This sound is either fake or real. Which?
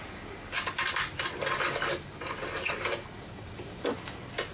real